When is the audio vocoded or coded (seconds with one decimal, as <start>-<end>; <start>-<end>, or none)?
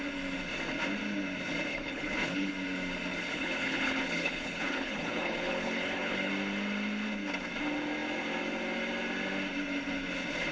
1.7-2.5; 3.1-6.3